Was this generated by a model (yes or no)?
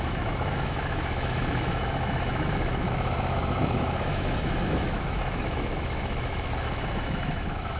yes